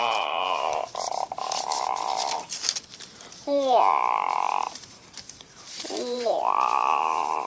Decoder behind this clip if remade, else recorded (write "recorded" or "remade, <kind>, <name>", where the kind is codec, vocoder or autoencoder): remade, vocoder, BigVGAN v2